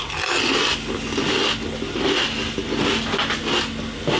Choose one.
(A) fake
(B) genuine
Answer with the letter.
B